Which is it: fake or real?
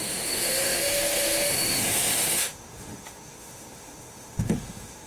fake